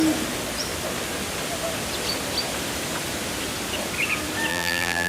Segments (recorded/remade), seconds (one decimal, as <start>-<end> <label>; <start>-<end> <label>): 0.0-4.5 recorded; 4.5-5.1 remade